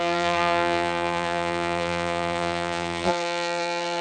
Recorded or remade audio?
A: remade